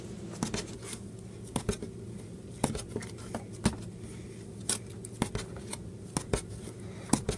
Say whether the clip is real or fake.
real